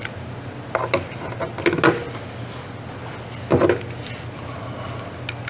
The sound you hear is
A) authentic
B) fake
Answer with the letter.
A